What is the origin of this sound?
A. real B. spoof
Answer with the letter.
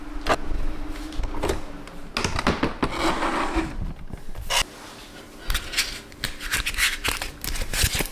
A